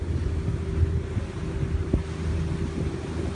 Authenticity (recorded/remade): recorded